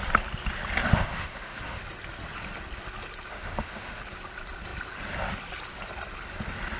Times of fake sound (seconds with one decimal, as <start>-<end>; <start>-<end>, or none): 0.9-1.8; 3.3-4.0